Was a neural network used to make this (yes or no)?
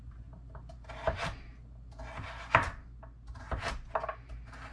no